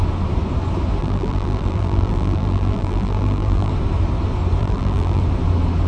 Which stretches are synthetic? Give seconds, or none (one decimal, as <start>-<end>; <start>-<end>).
1.0-3.7; 4.6-5.2